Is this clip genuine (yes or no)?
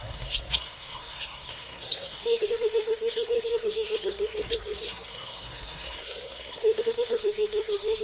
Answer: no